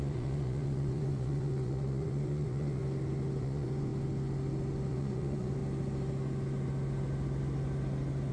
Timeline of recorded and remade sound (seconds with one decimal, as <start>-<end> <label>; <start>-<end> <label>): 0.0-2.8 remade; 2.8-3.4 recorded; 3.4-3.9 remade; 3.9-4.9 recorded; 4.9-5.6 remade; 5.6-8.3 recorded